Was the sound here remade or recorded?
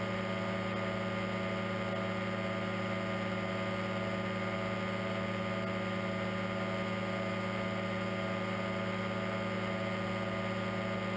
recorded